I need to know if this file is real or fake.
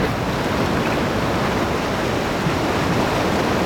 real